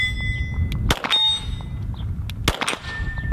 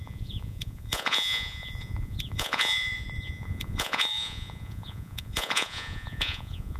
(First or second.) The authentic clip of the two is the first